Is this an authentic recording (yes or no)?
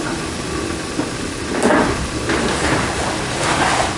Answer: yes